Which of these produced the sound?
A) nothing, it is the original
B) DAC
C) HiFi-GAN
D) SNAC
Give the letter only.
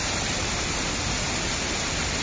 A